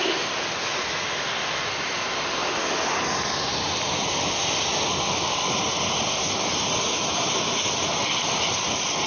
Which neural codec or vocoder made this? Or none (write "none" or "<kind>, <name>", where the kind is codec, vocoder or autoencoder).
none